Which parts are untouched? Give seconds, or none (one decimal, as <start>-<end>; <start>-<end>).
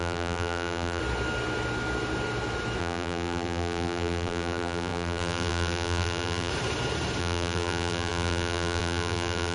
1.0-2.8; 6.5-7.2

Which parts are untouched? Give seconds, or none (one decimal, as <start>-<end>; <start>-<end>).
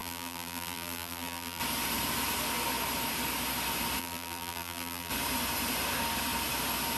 1.6-4.0; 5.1-7.0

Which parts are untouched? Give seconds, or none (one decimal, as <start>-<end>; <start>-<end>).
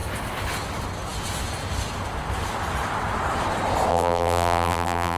0.0-3.9